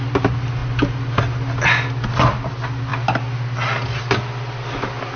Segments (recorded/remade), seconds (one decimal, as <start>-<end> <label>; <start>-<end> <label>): 0.0-5.2 recorded